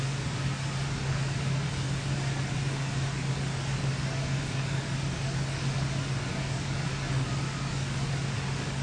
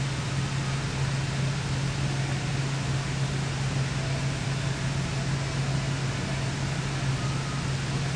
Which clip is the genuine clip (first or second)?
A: second